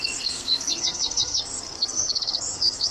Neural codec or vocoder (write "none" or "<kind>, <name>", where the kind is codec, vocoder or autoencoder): codec, SNAC